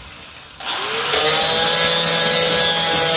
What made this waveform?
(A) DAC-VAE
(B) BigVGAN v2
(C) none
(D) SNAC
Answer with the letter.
C